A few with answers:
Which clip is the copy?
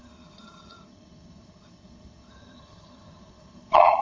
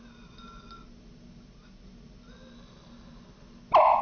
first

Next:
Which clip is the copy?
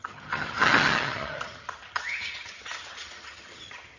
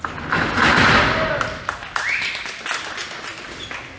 first